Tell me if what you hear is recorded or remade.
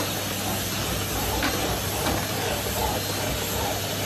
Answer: recorded